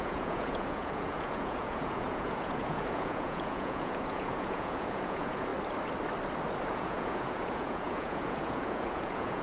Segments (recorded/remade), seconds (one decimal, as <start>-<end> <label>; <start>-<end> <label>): 0.0-5.5 remade; 5.5-6.7 recorded; 6.7-9.4 remade